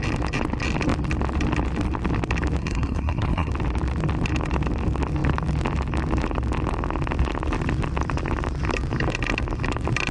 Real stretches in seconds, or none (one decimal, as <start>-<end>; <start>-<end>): 0.0-2.6; 3.5-10.1